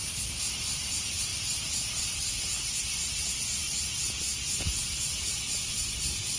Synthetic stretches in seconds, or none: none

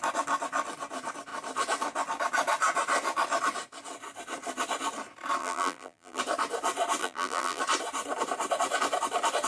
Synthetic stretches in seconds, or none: 5.4-6.2 (vocoder, BigVGAN v2); 7.0-7.6

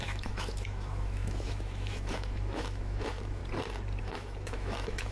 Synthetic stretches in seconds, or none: 0.0-3.4 (autoencoder, DAC-VAE); 4.0-5.1

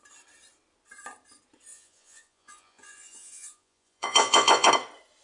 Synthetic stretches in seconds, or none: 1.7-4.7 (vocoder, Vocos)

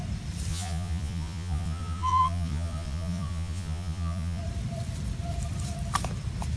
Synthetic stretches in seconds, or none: 0.5-4.4 (vocoder, Vocos)

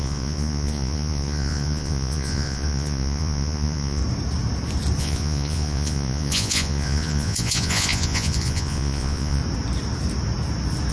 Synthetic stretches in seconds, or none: 0.0-4.0 (vocoder, Vocos); 5.0-9.4

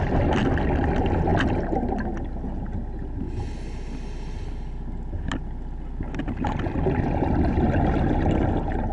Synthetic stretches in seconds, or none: none

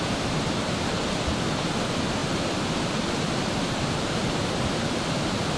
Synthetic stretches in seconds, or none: 0.0-1.0 (vocoder, BigVGAN v2); 1.6-5.6